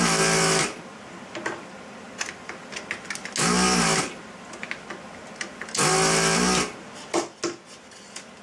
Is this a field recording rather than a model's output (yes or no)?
yes